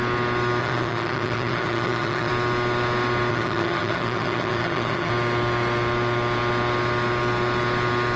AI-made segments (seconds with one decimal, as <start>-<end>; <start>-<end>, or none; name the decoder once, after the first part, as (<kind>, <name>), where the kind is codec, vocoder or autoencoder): 0.6-2.3 (vocoder, HiFi-GAN); 3.3-5.1